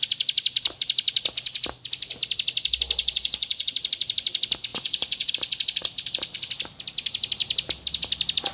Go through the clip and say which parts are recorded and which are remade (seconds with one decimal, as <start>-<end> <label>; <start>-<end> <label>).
0.0-3.0 recorded; 3.0-3.7 remade; 3.7-4.7 recorded; 4.7-5.3 remade; 5.3-8.5 recorded